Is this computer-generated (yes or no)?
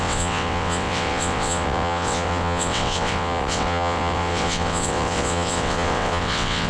yes